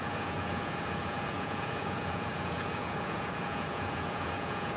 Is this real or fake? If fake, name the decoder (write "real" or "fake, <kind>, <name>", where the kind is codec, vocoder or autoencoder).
fake, vocoder, Vocos